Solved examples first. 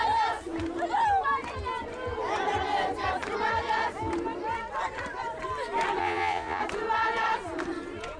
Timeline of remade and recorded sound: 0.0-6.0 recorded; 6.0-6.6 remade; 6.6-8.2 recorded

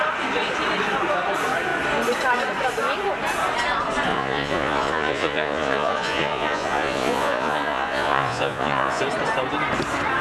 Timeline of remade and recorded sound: 0.0-4.1 recorded; 4.1-9.0 remade; 9.0-10.2 recorded

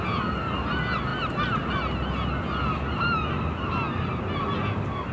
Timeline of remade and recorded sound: 0.0-5.1 recorded